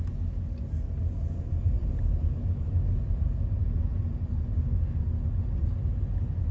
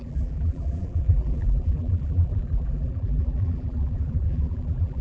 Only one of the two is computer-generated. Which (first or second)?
second